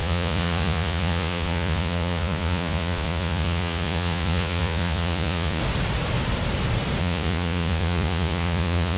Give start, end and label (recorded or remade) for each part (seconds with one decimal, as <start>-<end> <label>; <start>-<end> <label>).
0.0-5.6 remade; 5.6-7.0 recorded; 7.0-9.0 remade